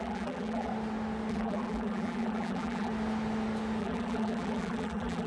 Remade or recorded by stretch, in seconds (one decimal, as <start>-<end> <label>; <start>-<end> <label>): 0.0-0.7 remade; 0.7-1.3 recorded; 1.3-2.9 remade; 2.9-3.8 recorded; 3.8-5.3 remade